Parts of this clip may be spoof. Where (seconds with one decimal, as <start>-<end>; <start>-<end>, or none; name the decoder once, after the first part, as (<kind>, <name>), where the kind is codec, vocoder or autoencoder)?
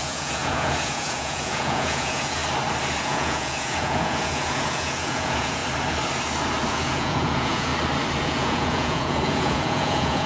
0.0-2.4 (vocoder, Vocos); 3.0-5.6; 6.7-7.7; 8.2-10.3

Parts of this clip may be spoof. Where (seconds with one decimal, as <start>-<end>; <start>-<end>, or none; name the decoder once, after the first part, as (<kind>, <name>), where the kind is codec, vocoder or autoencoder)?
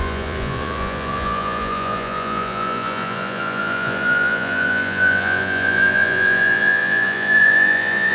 0.0-8.1 (vocoder, Vocos)